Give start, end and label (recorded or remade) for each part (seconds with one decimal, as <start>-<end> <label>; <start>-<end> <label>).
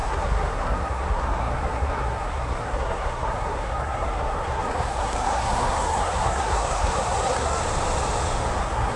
0.0-7.6 remade; 7.6-8.6 recorded; 8.6-9.0 remade